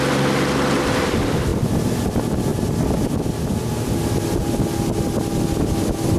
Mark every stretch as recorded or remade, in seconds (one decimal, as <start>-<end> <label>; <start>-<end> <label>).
0.0-1.5 recorded; 1.5-2.1 remade; 2.1-2.5 recorded; 2.5-4.0 remade; 4.0-6.2 recorded